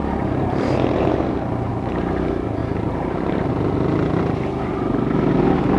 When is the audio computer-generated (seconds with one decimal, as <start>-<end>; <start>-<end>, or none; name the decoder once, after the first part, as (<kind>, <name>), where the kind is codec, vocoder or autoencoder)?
0.0-1.7 (vocoder, BigVGAN v2); 2.6-3.5